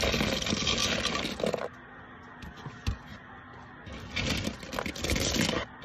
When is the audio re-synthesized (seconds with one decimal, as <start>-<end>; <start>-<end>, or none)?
none

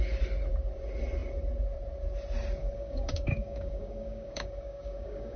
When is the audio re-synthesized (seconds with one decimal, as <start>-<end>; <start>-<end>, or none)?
2.6-5.4

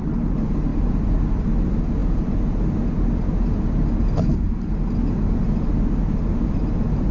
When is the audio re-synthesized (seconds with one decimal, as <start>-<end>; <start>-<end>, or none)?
none

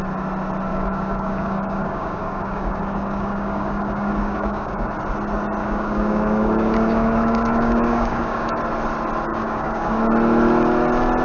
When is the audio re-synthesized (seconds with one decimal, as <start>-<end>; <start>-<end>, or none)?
0.7-4.9; 5.6-8.6; 9.3-10.0